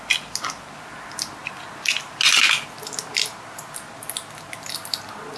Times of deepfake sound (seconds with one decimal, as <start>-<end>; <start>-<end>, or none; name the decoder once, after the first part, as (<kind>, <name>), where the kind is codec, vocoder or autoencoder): none